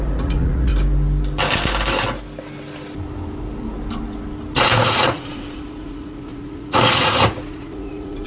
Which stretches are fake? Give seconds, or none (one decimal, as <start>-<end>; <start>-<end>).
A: 0.0-0.7; 4.5-8.3